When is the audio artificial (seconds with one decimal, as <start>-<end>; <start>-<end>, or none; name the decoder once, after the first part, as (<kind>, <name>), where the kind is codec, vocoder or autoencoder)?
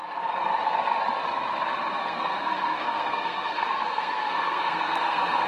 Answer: 1.9-5.5 (codec, SNAC)